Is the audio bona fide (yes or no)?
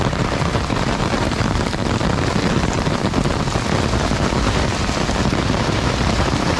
no